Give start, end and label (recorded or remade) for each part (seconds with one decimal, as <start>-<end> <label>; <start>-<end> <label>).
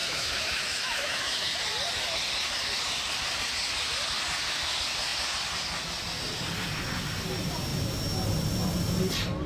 0.0-1.5 remade; 1.5-9.5 recorded